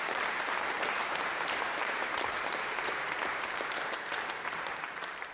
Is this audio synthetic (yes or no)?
yes